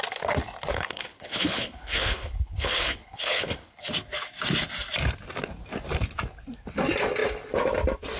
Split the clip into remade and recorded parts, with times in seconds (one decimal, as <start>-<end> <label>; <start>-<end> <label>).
0.0-0.7 recorded; 0.7-3.8 remade; 3.8-8.2 recorded